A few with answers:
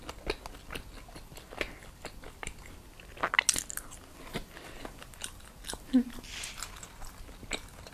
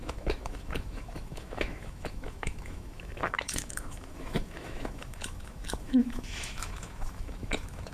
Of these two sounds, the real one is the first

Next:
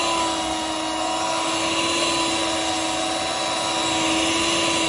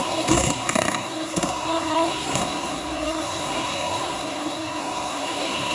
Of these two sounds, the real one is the first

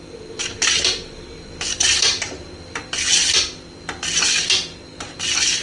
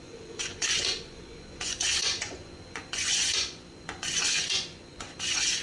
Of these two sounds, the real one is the first